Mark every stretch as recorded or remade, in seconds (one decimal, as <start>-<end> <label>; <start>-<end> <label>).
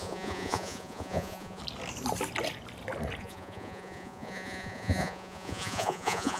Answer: 0.0-1.6 remade; 1.6-3.2 recorded; 3.2-6.4 remade